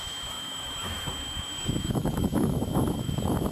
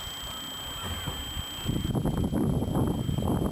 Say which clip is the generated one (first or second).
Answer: first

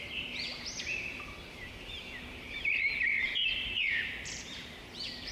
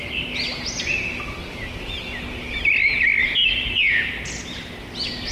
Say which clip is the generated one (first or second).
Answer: first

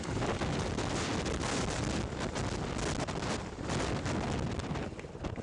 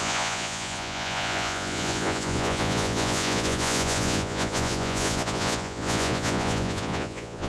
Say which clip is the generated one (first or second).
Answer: second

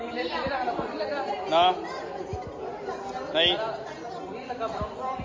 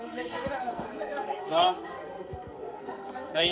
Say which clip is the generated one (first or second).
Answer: second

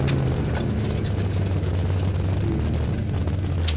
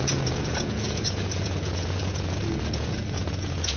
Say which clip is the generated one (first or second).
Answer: second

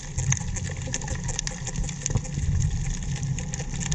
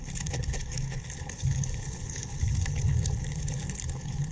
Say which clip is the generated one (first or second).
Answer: second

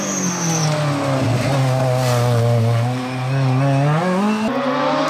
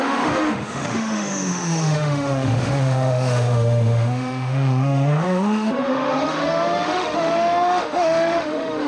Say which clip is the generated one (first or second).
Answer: second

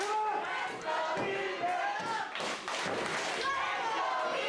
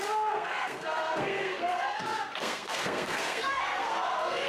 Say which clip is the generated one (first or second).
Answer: second